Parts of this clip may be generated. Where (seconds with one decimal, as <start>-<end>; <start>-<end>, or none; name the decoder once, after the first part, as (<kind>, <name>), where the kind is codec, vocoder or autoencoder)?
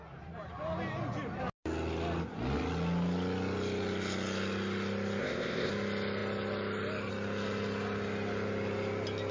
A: 5.2-5.7 (codec, ZipCodec)